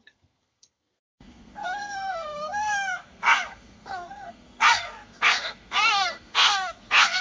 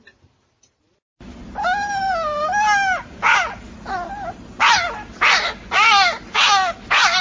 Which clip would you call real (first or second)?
second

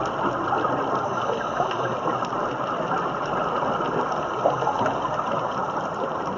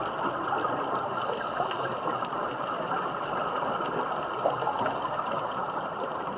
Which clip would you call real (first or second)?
first